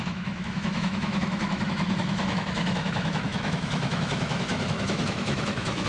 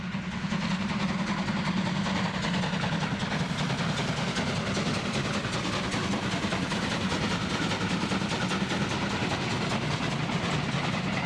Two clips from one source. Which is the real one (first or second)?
second